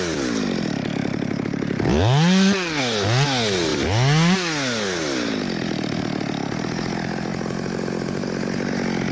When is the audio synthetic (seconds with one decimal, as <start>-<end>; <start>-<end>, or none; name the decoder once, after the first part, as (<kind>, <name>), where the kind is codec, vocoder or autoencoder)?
none